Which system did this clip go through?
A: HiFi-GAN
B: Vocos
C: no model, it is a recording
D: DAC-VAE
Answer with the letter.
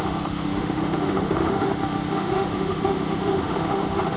D